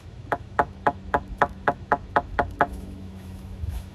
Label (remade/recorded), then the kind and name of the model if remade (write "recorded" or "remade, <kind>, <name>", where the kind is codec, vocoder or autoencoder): remade, autoencoder, DAC-VAE